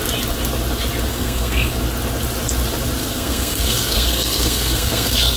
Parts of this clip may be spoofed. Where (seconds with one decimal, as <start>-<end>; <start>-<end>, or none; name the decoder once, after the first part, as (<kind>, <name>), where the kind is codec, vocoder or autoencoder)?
1.1-1.8 (codec, SNAC); 3.0-5.4

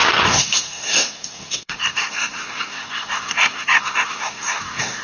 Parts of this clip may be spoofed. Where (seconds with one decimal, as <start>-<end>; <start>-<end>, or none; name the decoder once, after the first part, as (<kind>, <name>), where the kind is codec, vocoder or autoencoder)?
0.0-5.0 (codec, SNAC)

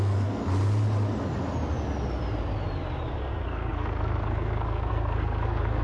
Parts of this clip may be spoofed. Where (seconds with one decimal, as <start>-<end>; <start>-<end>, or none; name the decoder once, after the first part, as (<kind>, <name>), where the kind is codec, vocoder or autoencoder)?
0.0-0.4 (codec, SNAC); 3.1-5.8